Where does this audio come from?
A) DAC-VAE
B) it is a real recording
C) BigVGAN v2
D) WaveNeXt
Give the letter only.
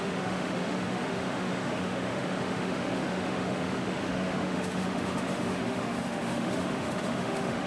A